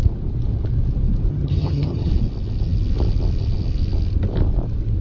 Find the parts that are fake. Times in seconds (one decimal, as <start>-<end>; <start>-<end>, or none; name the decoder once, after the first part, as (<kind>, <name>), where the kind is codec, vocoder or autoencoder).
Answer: 1.3-2.1 (vocoder, HiFi-GAN)